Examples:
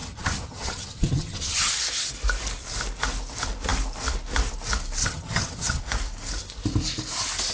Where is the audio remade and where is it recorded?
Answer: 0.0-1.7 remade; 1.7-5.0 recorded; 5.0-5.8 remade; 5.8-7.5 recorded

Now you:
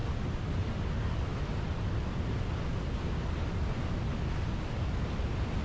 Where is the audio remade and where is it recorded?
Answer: 0.0-5.6 recorded

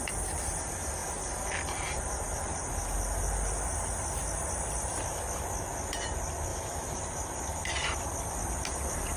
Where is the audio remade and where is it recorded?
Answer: 0.0-6.5 recorded; 6.5-7.0 remade; 7.0-9.2 recorded

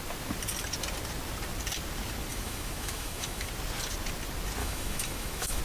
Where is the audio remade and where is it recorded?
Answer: 0.0-2.3 recorded; 2.3-3.5 remade; 3.5-4.6 recorded; 4.6-5.6 remade

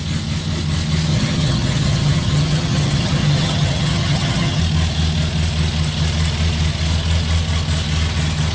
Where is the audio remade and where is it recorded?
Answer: 0.0-1.1 recorded; 1.1-4.6 remade; 4.6-8.5 recorded

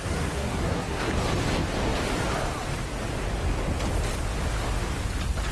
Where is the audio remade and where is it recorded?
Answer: 0.0-1.1 remade; 1.1-5.5 recorded

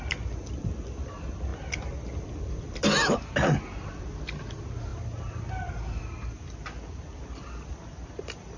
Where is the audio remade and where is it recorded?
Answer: 0.0-8.6 recorded